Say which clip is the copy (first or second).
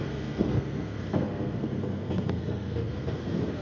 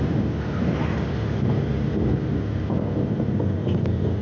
first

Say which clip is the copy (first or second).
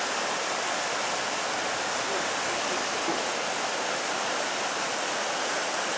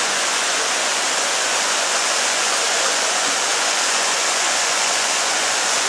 second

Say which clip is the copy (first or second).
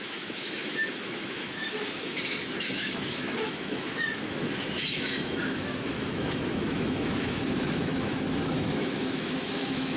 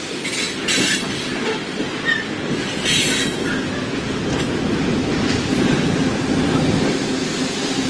first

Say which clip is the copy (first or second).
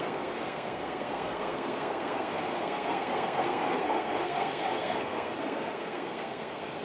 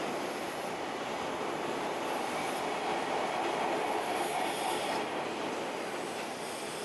first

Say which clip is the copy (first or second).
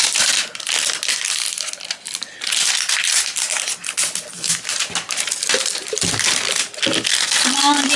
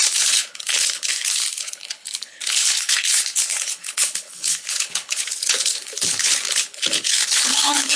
second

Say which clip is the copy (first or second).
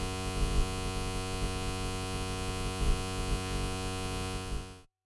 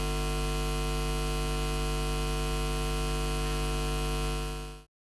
first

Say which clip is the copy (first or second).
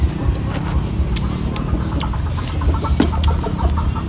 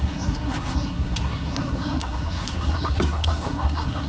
second